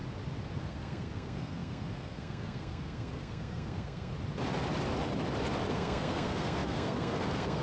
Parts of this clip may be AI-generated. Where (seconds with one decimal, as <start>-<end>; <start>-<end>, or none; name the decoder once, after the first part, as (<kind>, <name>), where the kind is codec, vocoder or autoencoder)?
0.6-4.1 (codec, SNAC); 5.7-7.6